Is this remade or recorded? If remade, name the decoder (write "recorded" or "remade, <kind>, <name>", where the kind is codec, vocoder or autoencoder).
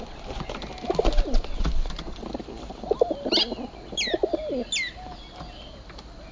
recorded